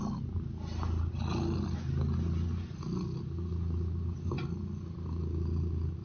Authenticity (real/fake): real